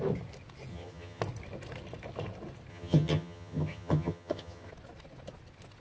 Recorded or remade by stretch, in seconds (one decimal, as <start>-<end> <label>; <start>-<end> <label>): 0.0-0.7 recorded; 0.7-1.2 remade; 1.2-2.7 recorded; 2.7-4.7 remade; 4.7-5.8 recorded